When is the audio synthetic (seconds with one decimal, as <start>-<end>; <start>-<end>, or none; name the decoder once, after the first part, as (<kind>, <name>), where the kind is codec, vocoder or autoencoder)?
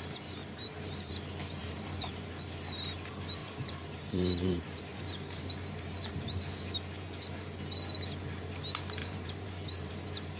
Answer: 0.4-1.1 (vocoder, BigVGAN v2); 1.6-2.3; 3.4-6.1; 9.0-9.9